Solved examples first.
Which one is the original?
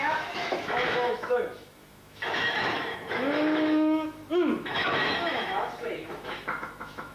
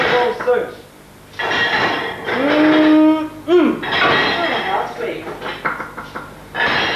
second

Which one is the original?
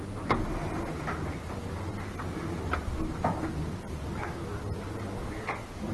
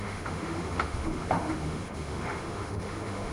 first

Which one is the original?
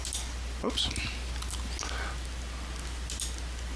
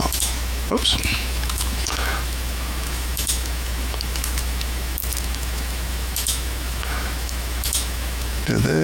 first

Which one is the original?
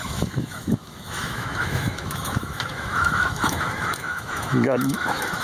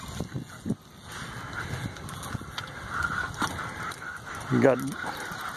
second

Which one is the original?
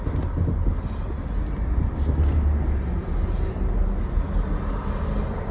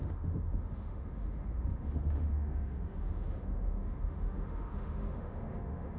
first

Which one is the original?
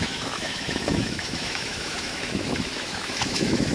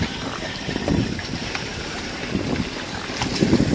second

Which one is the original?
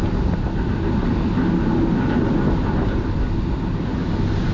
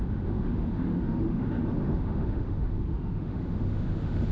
first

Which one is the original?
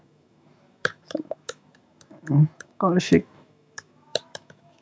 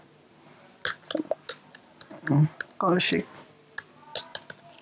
second